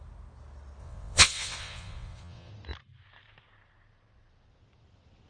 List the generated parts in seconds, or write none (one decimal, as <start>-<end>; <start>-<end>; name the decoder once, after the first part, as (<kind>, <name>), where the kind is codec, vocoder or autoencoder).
0.8-2.5 (vocoder, WaveNeXt)